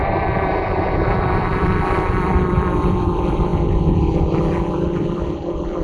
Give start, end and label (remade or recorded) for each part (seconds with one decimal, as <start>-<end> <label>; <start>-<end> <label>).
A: 0.0-3.5 remade; 3.5-4.7 recorded; 4.7-5.8 remade